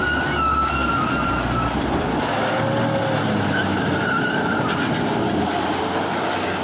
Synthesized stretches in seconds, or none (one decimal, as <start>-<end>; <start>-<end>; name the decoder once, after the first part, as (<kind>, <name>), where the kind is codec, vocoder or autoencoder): 3.6-5.7 (vocoder, BigVGAN v2)